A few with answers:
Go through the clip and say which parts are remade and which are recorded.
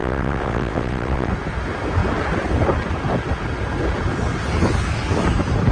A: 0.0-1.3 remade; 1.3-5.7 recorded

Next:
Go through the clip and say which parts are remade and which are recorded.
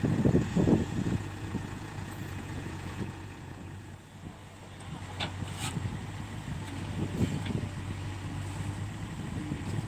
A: 0.0-0.4 recorded; 0.4-3.9 remade; 3.9-9.9 recorded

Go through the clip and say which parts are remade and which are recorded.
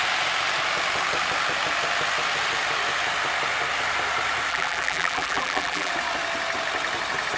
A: 0.0-4.5 recorded; 4.5-5.9 remade; 5.9-7.4 recorded